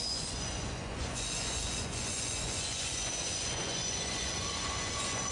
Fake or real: fake